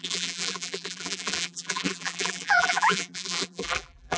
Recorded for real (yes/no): no